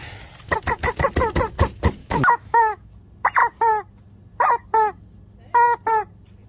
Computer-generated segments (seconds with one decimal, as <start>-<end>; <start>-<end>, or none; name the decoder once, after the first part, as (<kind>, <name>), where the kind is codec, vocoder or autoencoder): 2.0-2.9 (autoencoder, DAC-VAE)